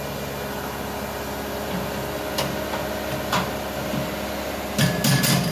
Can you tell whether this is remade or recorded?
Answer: recorded